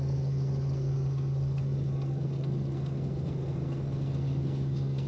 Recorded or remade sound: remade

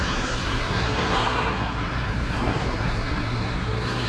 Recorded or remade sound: remade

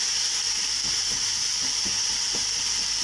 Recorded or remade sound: remade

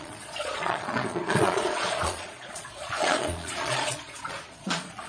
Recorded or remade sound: remade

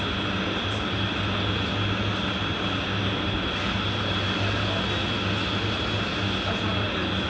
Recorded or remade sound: recorded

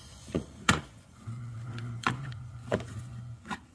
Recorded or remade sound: remade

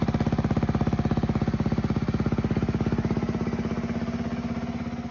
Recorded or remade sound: recorded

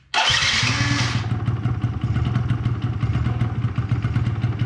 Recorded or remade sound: recorded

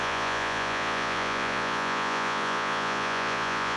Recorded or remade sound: remade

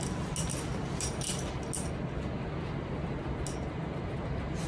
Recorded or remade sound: recorded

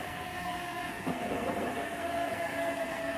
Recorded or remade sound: remade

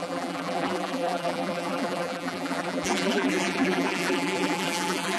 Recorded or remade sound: remade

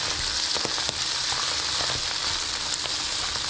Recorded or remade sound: recorded